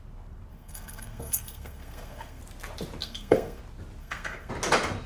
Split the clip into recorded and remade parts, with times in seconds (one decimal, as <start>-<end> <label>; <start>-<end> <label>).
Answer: 0.0-0.5 recorded; 0.5-2.4 remade; 2.4-3.0 recorded; 3.0-3.6 remade; 3.6-4.0 recorded; 4.0-4.5 remade; 4.5-5.1 recorded